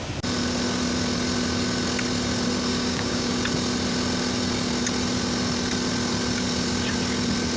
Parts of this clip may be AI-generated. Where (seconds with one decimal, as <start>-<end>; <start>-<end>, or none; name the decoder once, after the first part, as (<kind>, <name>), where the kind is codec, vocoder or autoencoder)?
2.7-3.3 (codec, DAC)